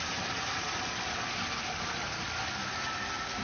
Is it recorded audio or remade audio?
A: recorded